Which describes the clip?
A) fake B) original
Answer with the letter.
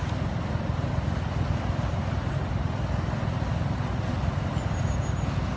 B